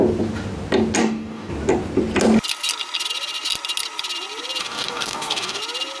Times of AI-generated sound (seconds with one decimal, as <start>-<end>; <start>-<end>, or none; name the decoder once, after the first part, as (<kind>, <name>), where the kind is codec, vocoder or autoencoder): 1.0-1.5 (codec, DAC); 4.6-5.6